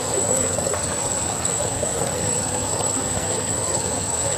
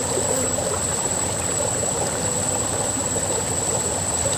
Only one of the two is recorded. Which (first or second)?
second